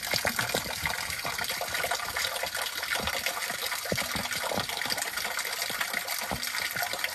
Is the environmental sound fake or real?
real